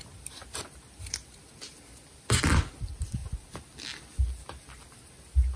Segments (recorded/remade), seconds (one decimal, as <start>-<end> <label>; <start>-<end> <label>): 0.0-5.6 recorded